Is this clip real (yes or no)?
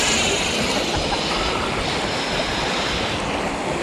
no